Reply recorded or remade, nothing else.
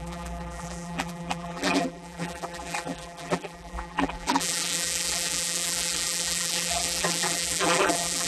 remade